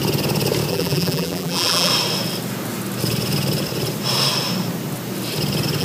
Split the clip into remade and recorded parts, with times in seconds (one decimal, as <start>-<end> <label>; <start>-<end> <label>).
0.0-0.7 recorded; 0.7-1.9 remade; 1.9-5.8 recorded